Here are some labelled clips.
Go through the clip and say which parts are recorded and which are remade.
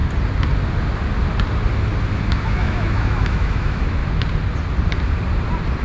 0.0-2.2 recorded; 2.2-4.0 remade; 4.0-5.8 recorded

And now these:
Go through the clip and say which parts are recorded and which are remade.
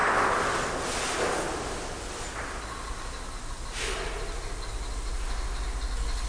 0.0-6.3 recorded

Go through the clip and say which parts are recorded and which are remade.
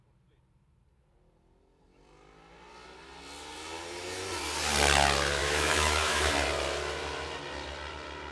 0.0-5.4 recorded; 5.4-6.3 remade; 6.3-8.3 recorded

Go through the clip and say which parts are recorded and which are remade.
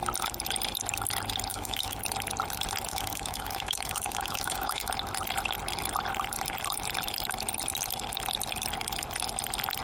0.0-1.5 recorded; 1.5-2.0 remade; 2.0-2.9 recorded; 2.9-4.9 remade; 4.9-9.8 recorded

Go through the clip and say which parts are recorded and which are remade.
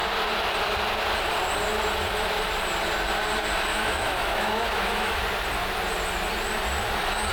0.0-3.7 recorded; 3.7-5.2 remade; 5.2-7.3 recorded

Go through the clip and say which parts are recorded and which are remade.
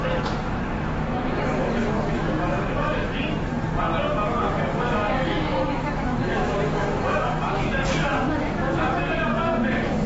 0.0-3.5 remade; 3.5-4.3 recorded; 4.3-10.1 remade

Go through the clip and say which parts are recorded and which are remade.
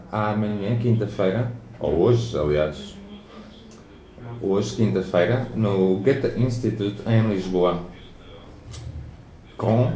0.0-0.5 recorded; 0.5-4.2 remade; 4.2-5.7 recorded; 5.7-8.0 remade; 8.0-10.0 recorded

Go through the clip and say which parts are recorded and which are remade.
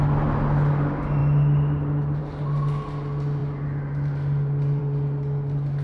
0.0-5.8 recorded